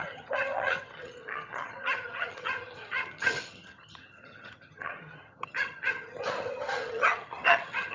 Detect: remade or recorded remade